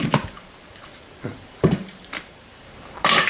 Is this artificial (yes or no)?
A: yes